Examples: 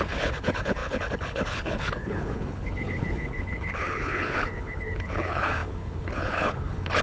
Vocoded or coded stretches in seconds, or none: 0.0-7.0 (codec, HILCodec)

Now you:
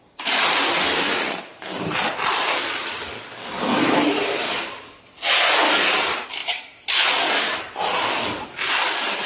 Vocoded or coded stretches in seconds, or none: none

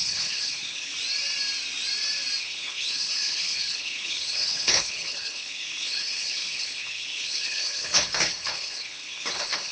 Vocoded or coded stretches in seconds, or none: 0.0-0.9 (codec, HILCodec); 2.4-9.7